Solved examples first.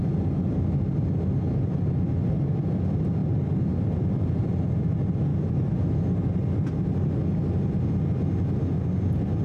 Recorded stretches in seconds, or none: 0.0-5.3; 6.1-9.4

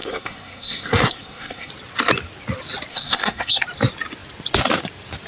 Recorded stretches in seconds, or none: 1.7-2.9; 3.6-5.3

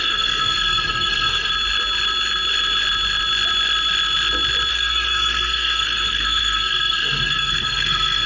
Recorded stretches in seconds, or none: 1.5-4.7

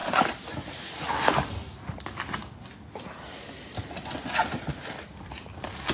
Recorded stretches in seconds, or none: 0.0-5.9

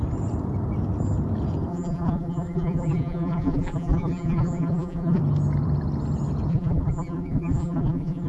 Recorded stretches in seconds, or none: 0.0-1.7; 5.2-6.5

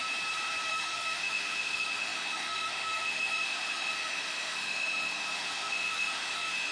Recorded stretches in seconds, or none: 0.0-0.7

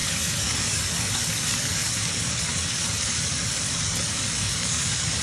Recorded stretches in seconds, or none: none

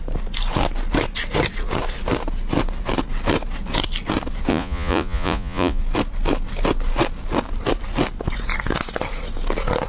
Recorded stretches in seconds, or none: 0.0-4.5; 5.8-9.9